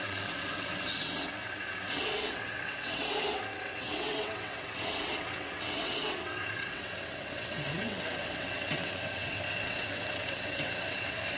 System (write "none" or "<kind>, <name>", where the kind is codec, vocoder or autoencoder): vocoder, WaveNeXt